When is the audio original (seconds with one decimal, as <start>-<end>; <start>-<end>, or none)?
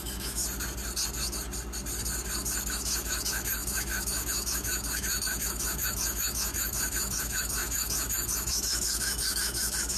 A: 0.4-2.7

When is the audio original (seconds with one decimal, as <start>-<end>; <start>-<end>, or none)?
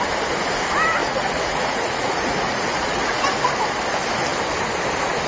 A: 0.0-1.0; 3.2-5.3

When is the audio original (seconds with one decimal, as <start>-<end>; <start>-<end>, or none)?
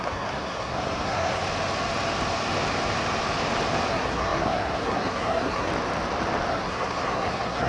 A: 1.4-3.9; 5.7-6.5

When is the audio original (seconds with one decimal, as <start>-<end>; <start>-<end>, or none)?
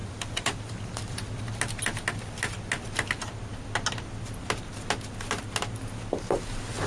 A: 1.4-6.9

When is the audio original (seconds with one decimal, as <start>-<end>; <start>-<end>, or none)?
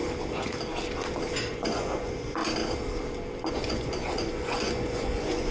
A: 0.0-1.5; 2.4-3.5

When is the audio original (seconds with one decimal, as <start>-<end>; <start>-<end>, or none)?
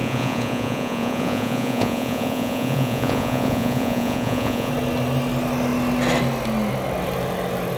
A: 4.7-7.8